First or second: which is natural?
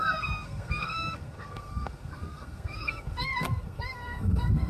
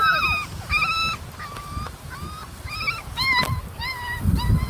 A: second